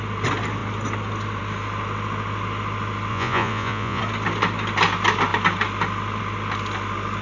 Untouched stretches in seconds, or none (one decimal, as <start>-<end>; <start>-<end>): 0.0-3.1; 4.0-7.2